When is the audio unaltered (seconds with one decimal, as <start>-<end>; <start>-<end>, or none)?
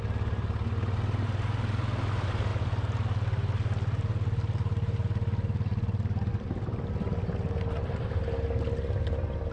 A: 0.0-9.5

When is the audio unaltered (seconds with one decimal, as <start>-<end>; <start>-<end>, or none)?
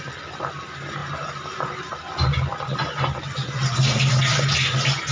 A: 0.0-5.1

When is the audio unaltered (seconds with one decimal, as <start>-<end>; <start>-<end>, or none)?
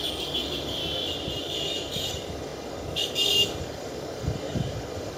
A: 0.8-1.4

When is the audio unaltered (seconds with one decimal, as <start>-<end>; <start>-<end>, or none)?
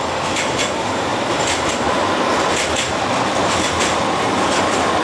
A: 0.0-5.0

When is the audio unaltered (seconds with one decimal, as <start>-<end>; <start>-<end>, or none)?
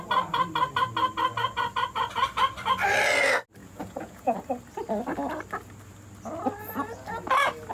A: 0.0-3.6; 4.4-7.7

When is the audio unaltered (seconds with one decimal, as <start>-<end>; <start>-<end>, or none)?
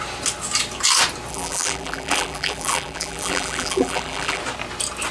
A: 0.0-1.3; 4.4-5.1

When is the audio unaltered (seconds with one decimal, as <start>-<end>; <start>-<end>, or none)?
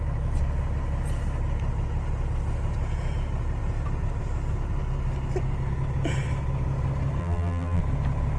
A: 0.0-7.2; 7.8-8.4